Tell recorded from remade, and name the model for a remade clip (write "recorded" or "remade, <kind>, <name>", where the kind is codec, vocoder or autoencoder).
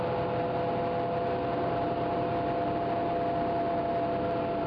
recorded